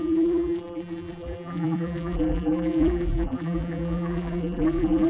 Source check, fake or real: fake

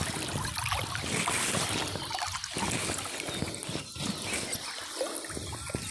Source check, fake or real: real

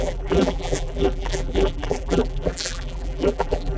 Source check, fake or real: fake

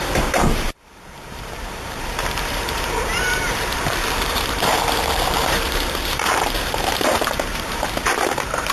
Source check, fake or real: fake